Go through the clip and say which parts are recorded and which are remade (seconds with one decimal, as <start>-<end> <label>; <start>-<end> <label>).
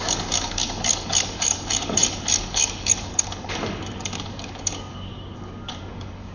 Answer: 0.0-6.3 remade